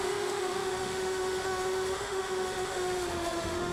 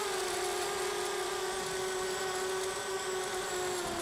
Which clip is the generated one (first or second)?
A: first